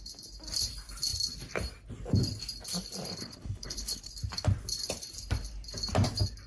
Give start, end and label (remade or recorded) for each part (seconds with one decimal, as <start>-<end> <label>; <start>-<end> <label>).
0.0-3.2 recorded; 3.2-4.1 remade; 4.1-6.5 recorded